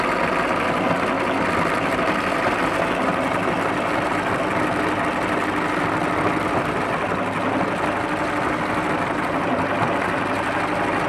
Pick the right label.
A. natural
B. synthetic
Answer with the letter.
A